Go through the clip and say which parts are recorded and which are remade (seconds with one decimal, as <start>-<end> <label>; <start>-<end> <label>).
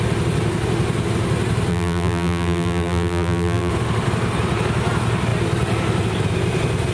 0.0-1.7 recorded; 1.7-3.7 remade; 3.7-6.9 recorded